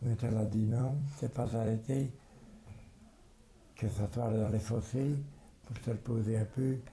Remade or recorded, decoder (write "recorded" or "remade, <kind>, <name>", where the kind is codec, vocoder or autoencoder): remade, vocoder, BigVGAN v2